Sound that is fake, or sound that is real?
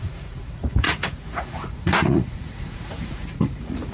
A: fake